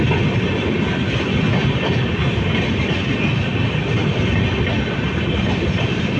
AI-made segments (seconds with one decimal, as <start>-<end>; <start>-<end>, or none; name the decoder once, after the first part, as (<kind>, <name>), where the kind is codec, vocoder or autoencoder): none